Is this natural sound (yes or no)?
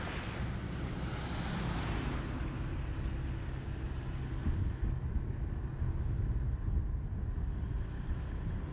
yes